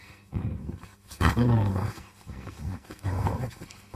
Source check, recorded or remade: remade